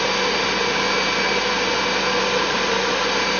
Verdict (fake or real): real